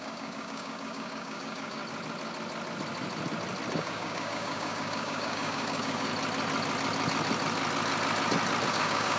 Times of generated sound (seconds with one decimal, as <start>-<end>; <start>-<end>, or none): 0.0-1.8; 3.7-6.1; 8.7-9.2